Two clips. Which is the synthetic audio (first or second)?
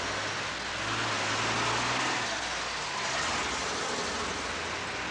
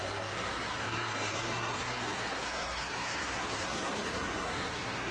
second